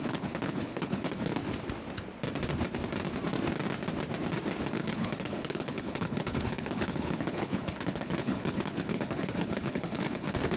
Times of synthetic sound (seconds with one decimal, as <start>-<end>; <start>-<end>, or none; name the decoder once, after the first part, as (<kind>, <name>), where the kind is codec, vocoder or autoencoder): 0.0-1.4 (codec, HILCodec); 4.7-10.6